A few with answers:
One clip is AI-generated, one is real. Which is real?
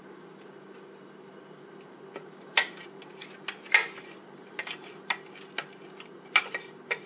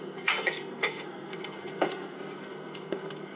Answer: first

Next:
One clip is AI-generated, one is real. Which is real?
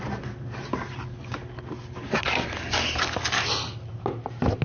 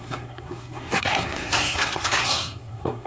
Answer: first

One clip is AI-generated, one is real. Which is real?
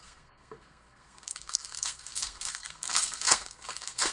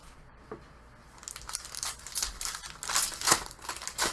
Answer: second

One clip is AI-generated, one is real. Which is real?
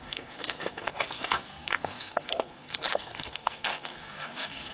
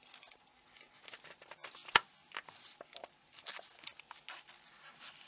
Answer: second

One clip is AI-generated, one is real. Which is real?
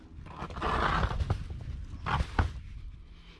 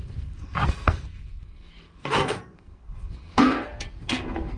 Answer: first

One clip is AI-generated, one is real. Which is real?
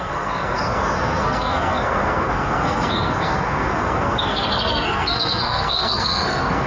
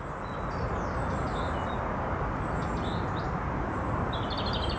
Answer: second